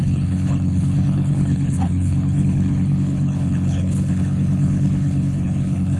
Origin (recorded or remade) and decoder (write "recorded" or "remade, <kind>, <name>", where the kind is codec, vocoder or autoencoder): remade, codec, HILCodec